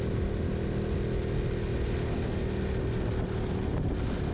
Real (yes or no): yes